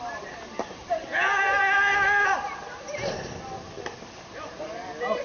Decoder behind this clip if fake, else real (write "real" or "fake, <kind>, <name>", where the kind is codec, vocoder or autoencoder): real